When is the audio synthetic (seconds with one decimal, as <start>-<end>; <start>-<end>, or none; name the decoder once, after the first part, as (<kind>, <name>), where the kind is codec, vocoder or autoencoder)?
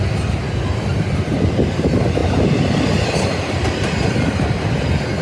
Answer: none